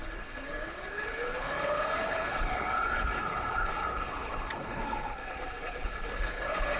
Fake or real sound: fake